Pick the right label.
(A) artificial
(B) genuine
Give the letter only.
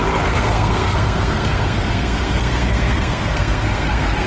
A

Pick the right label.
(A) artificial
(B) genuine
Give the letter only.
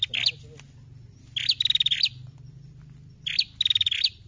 B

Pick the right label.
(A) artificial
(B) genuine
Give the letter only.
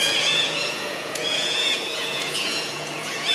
A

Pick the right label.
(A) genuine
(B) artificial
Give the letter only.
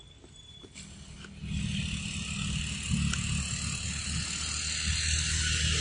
A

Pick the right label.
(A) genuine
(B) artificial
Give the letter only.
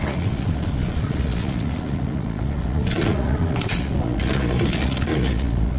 B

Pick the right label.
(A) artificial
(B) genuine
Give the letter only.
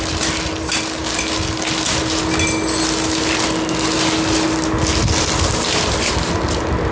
B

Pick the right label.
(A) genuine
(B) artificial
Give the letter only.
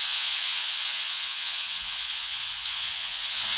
B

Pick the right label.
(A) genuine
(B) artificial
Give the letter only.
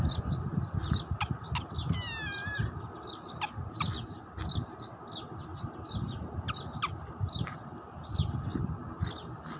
A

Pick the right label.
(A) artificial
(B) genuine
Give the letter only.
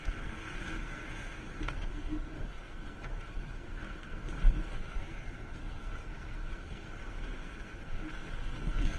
A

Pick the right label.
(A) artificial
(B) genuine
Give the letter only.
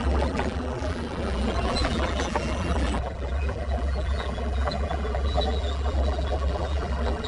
A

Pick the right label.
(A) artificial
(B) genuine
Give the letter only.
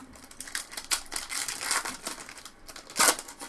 B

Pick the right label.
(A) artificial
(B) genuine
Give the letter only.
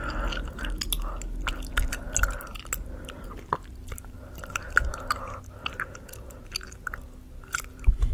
B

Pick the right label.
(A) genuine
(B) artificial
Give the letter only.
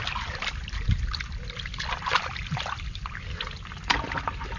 A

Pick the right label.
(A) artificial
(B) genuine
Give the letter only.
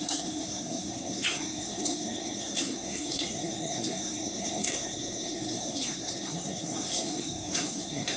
A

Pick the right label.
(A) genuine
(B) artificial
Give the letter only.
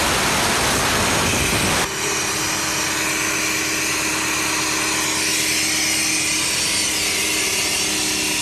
A